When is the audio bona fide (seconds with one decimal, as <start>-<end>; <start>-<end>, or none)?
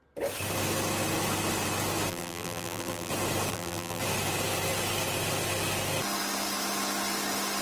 0.0-2.1; 3.1-3.5; 4.0-7.6